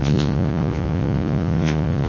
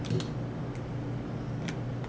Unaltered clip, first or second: second